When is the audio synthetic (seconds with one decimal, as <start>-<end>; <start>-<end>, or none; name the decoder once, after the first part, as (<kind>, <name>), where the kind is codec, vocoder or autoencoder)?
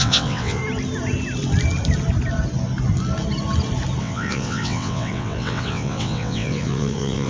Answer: 0.0-0.6 (vocoder, WaveNeXt); 4.0-7.3